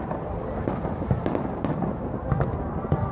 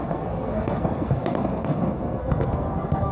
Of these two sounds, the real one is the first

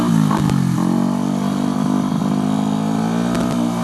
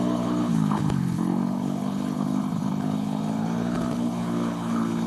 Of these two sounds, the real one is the first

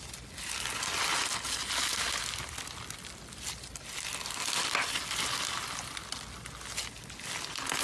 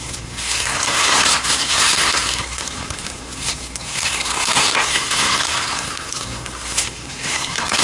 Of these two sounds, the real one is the first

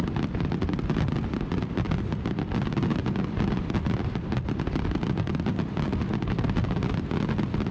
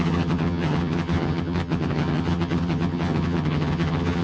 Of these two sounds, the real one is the first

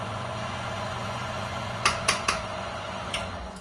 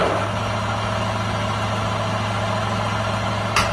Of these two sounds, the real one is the second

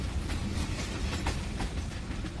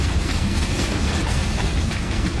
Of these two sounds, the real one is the first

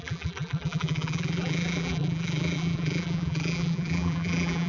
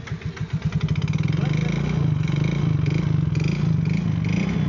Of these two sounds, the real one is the second